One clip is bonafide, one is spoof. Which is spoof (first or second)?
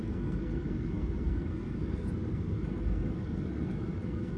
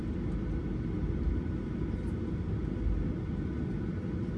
first